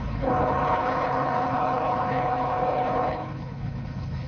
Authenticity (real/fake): fake